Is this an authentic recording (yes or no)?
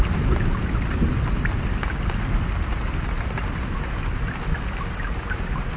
yes